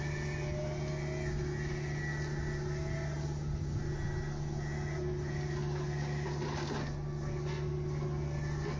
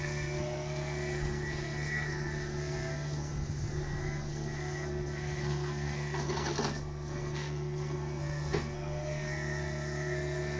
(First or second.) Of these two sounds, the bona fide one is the first